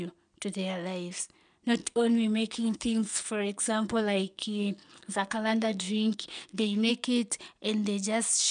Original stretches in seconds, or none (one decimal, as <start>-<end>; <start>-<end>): 0.0-1.8; 6.9-8.5